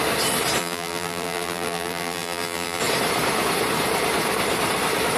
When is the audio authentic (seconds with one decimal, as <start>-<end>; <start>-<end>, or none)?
0.0-0.6; 2.8-5.2